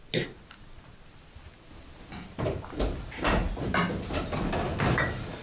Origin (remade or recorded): recorded